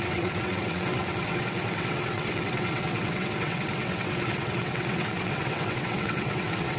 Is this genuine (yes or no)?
no